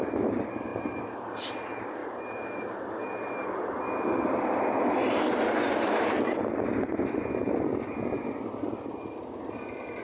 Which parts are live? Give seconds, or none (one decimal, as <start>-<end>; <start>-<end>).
0.0-10.0